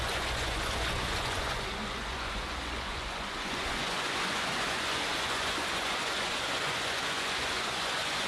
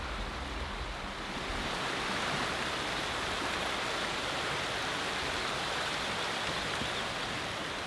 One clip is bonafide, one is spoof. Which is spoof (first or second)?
first